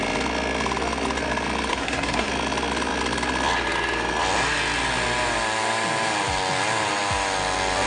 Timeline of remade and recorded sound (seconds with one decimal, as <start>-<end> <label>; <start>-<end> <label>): 0.0-1.7 recorded; 1.7-2.3 remade; 2.3-7.9 recorded